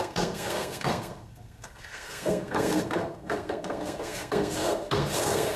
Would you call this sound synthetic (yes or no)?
yes